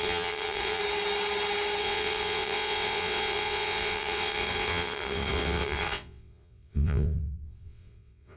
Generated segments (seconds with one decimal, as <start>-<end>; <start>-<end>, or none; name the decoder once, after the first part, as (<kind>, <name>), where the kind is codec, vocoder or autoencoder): 0.0-0.8 (vocoder, WaveNeXt); 1.8-8.4